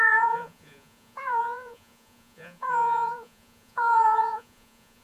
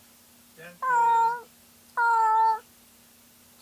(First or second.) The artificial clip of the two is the first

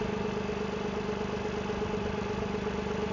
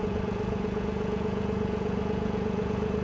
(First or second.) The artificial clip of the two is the second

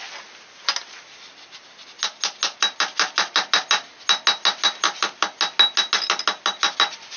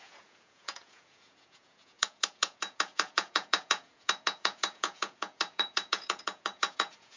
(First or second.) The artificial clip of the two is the second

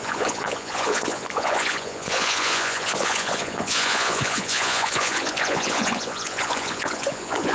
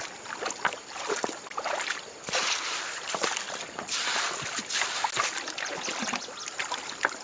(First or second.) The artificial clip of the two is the first